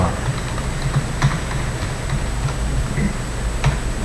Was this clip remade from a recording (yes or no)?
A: no